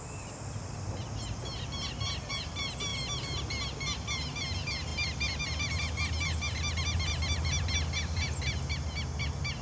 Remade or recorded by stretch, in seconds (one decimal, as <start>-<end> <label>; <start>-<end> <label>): 0.0-2.9 recorded; 2.9-3.4 remade; 3.4-9.6 recorded